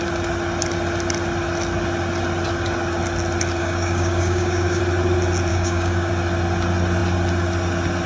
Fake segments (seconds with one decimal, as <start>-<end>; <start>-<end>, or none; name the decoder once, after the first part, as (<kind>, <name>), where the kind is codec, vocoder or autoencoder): 3.6-4.8 (codec, DAC); 5.5-6.1